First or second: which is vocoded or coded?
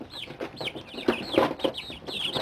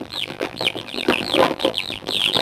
second